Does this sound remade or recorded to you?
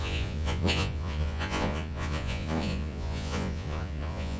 remade